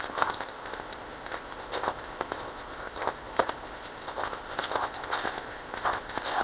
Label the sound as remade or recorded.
remade